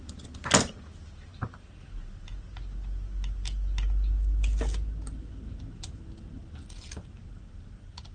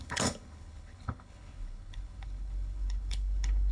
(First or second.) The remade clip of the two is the second